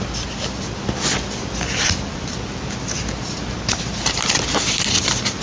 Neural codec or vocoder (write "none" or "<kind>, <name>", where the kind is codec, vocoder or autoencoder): none